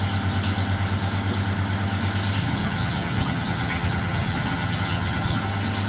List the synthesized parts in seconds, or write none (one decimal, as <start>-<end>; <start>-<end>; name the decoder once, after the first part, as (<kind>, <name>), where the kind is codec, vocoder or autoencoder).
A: 2.4-5.4 (vocoder, HiFi-GAN)

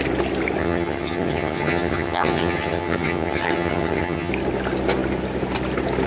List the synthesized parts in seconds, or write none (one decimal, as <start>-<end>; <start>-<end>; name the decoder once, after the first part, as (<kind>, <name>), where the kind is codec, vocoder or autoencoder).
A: 0.6-4.3 (vocoder, HiFi-GAN)

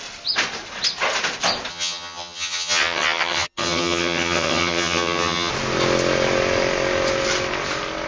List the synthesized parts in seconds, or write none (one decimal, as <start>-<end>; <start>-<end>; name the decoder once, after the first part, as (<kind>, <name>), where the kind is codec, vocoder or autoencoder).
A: 1.7-5.5 (vocoder, HiFi-GAN)

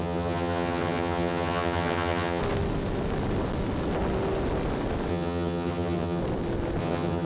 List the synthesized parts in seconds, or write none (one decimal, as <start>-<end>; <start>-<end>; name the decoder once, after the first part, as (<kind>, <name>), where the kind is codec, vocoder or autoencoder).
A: 0.0-2.4 (vocoder, HiFi-GAN); 5.1-6.2; 6.8-7.3

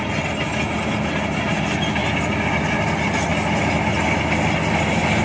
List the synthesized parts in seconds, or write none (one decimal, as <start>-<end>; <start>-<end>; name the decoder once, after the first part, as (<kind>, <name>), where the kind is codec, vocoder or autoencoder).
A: none

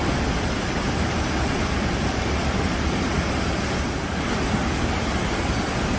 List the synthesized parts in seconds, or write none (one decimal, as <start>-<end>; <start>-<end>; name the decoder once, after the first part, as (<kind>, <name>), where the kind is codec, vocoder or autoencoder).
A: none